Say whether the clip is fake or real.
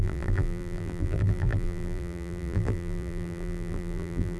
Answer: fake